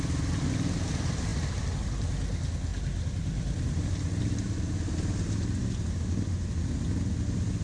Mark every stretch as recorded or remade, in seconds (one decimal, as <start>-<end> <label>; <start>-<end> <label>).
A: 0.0-7.6 recorded